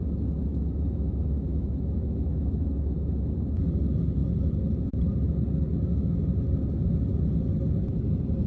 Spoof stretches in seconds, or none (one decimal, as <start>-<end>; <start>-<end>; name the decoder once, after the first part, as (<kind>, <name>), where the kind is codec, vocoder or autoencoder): 0.5-3.2 (autoencoder, DAC-VAE)